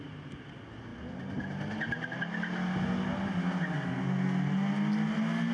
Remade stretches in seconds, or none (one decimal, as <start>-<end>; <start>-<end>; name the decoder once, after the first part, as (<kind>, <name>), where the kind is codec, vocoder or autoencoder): none